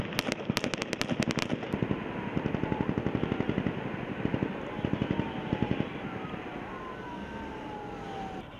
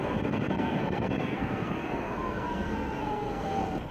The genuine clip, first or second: first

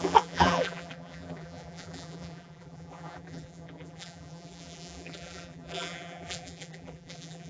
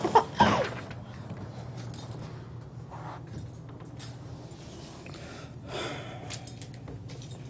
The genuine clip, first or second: second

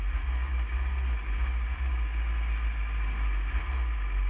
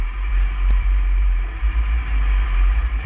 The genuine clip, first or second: first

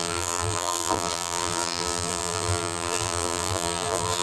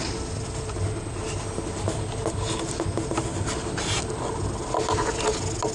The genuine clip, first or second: second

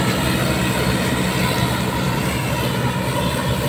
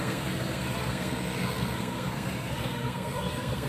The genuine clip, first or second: first